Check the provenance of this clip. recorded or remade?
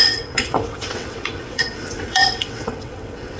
remade